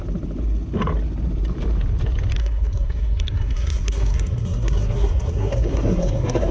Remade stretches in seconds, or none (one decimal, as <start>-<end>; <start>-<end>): 2.4-6.5

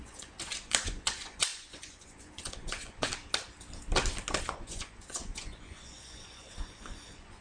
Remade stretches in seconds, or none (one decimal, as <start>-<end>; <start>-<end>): 0.0-3.1; 4.4-7.4